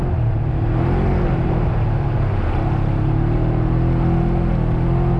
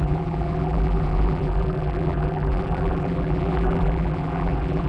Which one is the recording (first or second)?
first